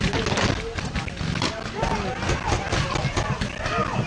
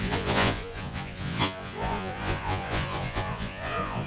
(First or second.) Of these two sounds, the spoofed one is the second